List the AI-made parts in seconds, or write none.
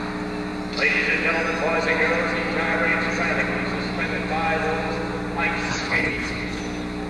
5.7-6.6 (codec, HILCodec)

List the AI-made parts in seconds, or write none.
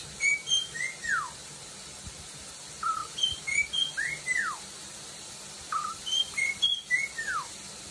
none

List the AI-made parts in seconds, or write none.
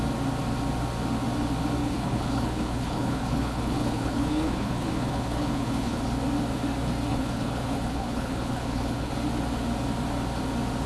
1.8-6.0 (codec, HILCodec); 7.1-9.1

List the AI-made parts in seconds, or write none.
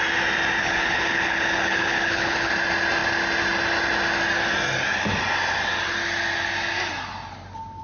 0.6-2.5 (codec, HILCodec)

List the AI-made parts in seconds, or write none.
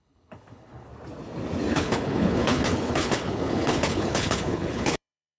0.0-0.9 (codec, HILCodec); 1.7-5.4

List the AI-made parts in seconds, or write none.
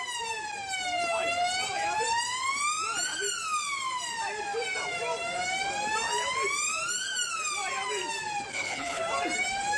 8.5-9.0 (codec, HILCodec)